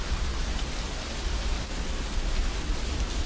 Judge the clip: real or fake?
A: real